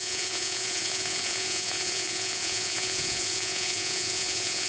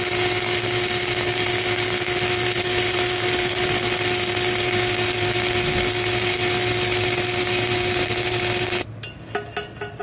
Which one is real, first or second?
second